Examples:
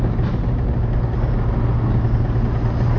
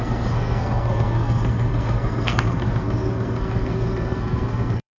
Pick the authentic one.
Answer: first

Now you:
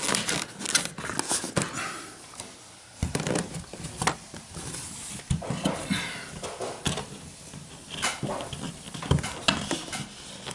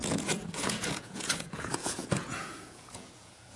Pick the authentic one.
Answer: first